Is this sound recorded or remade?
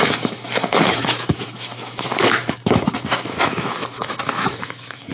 remade